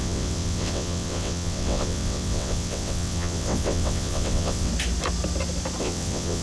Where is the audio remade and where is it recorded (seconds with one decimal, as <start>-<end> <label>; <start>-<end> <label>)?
0.0-4.7 remade; 4.7-5.8 recorded; 5.8-6.4 remade